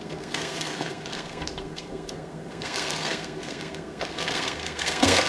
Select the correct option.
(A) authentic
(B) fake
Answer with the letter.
B